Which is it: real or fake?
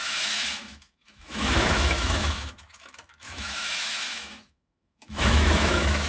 fake